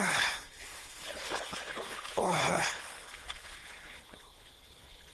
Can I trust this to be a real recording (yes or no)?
no